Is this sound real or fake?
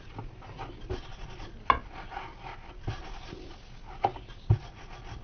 real